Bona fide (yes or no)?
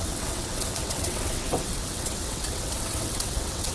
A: no